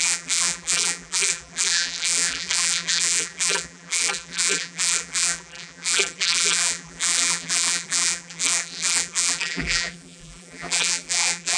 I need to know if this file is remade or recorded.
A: remade